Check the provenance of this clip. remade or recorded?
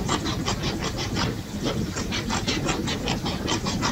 recorded